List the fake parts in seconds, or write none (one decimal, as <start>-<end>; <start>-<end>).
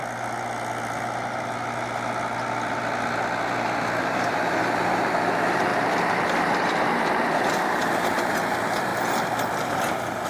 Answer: 4.0-8.9; 9.7-10.3